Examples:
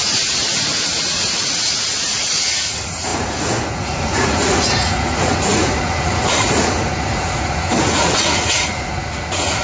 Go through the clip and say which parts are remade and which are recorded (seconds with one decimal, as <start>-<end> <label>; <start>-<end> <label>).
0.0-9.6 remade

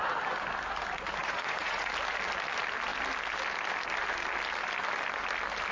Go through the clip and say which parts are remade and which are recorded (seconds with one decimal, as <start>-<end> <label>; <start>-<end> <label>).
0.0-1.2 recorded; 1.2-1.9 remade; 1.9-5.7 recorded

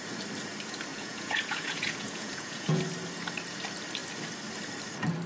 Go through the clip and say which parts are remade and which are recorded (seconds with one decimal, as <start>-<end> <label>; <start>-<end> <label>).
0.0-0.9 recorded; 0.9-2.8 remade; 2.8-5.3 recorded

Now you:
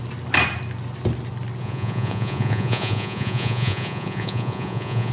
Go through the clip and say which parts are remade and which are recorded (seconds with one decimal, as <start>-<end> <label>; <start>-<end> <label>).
0.0-1.6 recorded; 1.6-5.1 remade

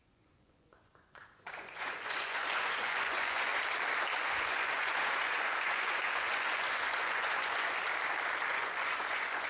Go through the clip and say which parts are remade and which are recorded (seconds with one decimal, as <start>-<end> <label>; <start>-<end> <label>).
0.0-3.5 remade; 3.5-4.1 recorded; 4.1-7.8 remade; 7.8-8.5 recorded; 8.5-9.5 remade

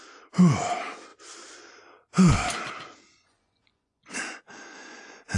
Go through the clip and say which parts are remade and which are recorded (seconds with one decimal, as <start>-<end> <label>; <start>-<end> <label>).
0.0-3.1 recorded; 3.1-5.4 remade

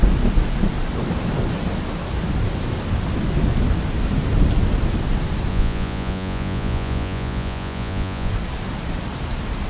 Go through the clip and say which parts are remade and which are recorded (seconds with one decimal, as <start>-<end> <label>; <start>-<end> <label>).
0.0-5.5 recorded; 5.5-8.3 remade; 8.3-9.7 recorded

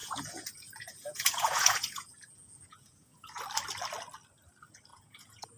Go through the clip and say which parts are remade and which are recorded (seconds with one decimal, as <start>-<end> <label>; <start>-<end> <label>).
0.0-3.4 remade; 3.4-4.9 recorded; 4.9-5.6 remade